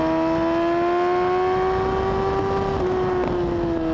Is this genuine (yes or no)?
yes